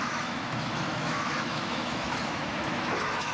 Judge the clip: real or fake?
fake